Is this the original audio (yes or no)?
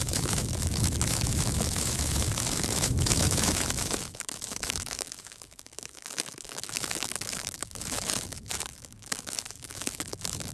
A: no